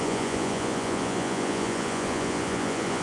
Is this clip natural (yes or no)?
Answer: no